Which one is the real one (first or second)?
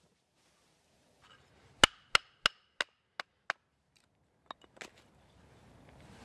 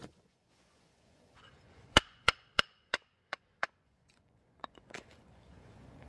first